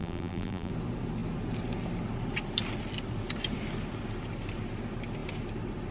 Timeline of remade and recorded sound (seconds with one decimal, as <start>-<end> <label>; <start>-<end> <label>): 0.0-0.7 remade; 0.7-5.9 recorded